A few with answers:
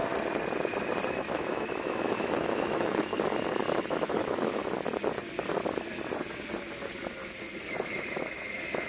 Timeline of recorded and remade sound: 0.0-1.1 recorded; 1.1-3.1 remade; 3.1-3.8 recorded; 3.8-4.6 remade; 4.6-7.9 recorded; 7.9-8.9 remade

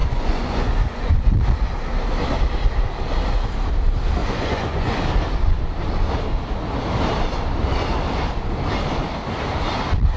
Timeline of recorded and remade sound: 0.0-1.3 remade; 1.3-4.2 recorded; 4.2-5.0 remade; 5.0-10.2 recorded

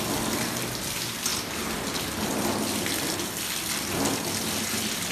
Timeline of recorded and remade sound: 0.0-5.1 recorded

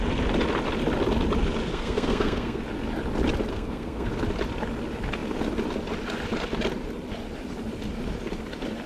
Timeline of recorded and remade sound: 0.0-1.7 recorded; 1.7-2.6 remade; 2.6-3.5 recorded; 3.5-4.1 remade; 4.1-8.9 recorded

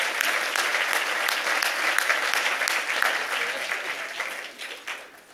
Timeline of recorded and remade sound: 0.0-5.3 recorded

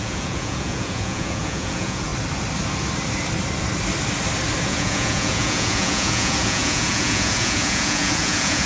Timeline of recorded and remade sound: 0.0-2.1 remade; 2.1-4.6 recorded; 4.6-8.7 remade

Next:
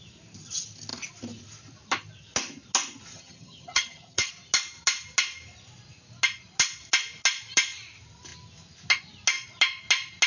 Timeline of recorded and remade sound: 0.0-3.1 recorded; 3.1-4.3 remade; 4.3-10.3 recorded